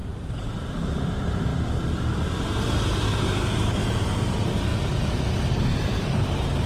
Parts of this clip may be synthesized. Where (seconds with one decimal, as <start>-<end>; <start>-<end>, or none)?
0.0-1.5; 2.6-6.7